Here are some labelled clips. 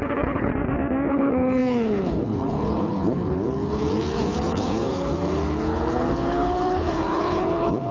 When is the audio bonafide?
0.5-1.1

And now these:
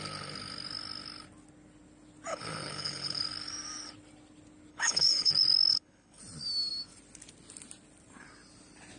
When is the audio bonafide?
0.0-2.3; 3.2-4.7; 5.3-5.7; 6.2-9.0

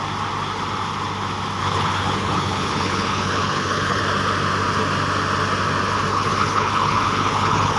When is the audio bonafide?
0.0-1.6; 4.0-6.1

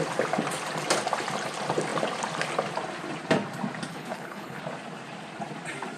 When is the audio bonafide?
0.0-3.9; 4.6-6.0